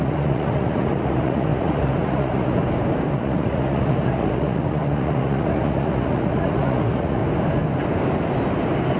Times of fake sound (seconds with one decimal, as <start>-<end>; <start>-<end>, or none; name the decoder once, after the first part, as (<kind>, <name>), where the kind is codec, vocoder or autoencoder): 0.0-2.6 (vocoder, Vocos); 3.1-7.2